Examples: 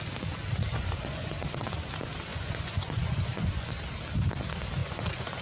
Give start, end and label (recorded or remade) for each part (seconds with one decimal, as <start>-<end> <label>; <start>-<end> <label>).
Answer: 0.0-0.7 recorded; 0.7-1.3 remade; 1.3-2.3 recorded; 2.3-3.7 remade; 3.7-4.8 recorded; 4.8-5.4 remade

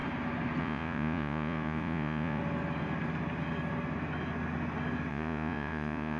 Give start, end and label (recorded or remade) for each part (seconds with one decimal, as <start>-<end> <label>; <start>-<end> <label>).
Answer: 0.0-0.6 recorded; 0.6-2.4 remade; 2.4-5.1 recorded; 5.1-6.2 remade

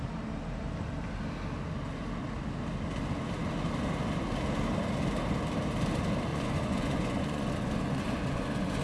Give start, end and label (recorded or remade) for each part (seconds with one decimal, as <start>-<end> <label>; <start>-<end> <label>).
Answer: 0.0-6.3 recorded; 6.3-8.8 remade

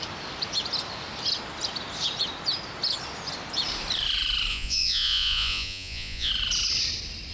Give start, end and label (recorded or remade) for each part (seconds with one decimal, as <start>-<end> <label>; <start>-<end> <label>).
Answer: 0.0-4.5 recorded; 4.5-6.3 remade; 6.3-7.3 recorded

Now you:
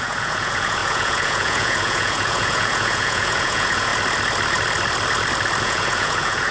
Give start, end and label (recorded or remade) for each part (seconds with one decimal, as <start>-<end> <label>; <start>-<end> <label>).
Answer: 0.0-3.9 remade; 3.9-5.6 recorded; 5.6-6.5 remade

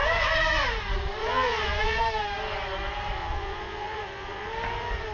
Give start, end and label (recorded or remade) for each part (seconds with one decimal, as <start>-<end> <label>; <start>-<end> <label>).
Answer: 0.0-1.2 recorded; 1.2-2.0 remade; 2.0-3.2 recorded; 3.2-4.5 remade; 4.5-5.1 recorded

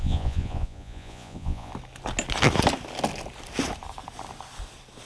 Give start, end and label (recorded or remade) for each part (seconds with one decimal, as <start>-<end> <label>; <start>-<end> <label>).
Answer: 0.0-1.7 remade; 1.7-5.1 recorded

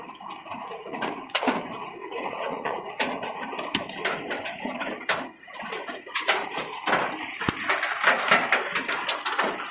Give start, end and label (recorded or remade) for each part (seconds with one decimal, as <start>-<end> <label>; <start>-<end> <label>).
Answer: 0.0-0.4 recorded; 0.4-3.1 remade; 3.1-9.7 recorded